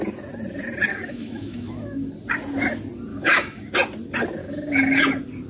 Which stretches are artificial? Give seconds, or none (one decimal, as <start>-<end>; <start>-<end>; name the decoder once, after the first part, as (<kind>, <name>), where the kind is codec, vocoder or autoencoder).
0.9-2.1 (autoencoder, DAC-VAE); 3.1-3.7; 4.4-5.0